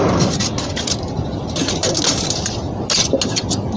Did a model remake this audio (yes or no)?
no